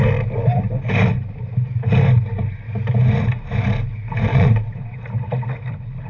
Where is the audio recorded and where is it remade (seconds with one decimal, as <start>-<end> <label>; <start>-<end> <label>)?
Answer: 0.0-4.3 recorded; 4.3-5.0 remade; 5.0-6.1 recorded